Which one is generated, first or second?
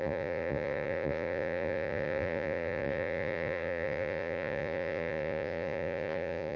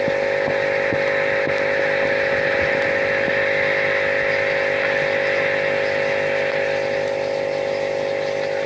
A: first